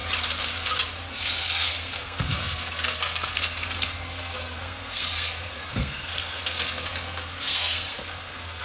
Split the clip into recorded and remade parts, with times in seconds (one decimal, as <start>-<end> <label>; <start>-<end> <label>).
0.0-1.1 recorded; 1.1-8.6 remade